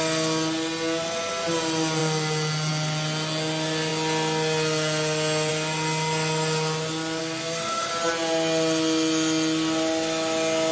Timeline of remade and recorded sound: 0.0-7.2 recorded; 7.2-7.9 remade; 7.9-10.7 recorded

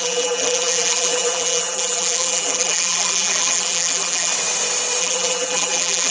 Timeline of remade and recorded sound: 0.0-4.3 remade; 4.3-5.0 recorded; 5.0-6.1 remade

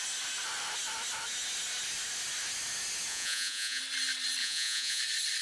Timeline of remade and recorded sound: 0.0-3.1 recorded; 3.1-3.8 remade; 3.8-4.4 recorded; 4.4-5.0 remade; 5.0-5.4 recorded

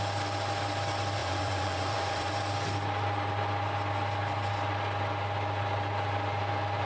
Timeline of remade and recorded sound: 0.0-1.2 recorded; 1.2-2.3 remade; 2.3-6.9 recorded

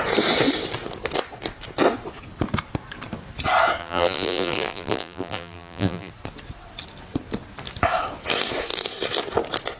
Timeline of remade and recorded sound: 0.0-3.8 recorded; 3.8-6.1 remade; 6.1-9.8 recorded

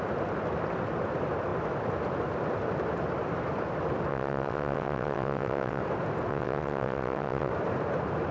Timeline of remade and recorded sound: 0.0-4.1 recorded; 4.1-5.8 remade; 5.8-6.3 recorded; 6.3-7.5 remade; 7.5-8.3 recorded